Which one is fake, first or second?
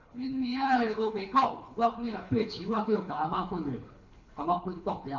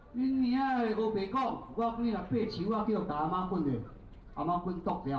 first